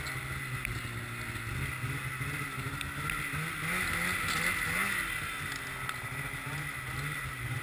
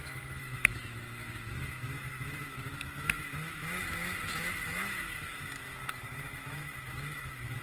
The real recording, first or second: first